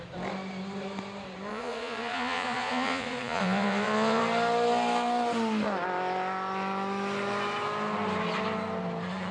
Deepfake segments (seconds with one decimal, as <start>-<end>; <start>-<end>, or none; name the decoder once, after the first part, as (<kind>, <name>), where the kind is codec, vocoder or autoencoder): 1.5-4.2 (vocoder, Vocos)